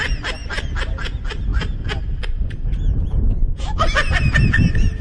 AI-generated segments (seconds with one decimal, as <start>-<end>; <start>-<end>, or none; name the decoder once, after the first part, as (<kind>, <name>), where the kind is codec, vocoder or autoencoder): none